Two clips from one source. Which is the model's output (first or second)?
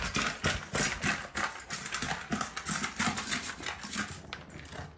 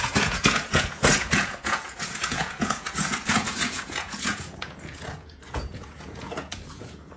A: second